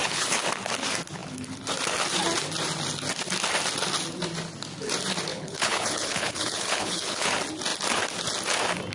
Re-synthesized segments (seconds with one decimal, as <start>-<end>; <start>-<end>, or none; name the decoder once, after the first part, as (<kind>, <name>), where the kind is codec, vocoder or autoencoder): 0.0-0.5 (codec, HILCodec); 5.3-7.3